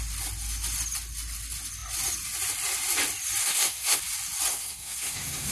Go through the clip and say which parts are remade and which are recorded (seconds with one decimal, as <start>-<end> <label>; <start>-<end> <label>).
0.0-3.4 recorded; 3.4-4.0 remade; 4.0-4.5 recorded; 4.5-5.5 remade